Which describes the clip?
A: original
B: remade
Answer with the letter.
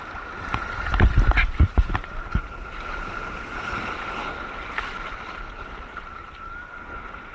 A